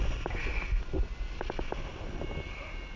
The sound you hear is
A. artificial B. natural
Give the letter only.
B